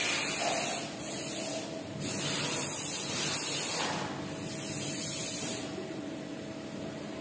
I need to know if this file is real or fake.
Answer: real